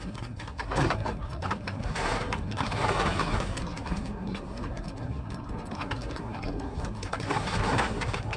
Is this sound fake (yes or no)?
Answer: yes